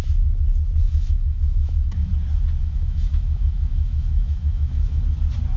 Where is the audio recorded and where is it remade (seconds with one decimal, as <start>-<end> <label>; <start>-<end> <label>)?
0.0-0.8 recorded; 0.8-2.1 remade; 2.1-2.6 recorded; 2.6-5.0 remade; 5.0-5.6 recorded